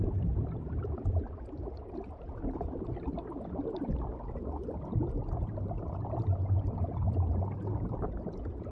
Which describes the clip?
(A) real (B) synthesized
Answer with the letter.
A